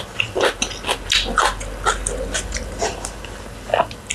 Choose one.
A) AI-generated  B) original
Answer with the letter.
B